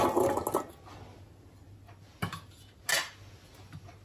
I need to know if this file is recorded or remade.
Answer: recorded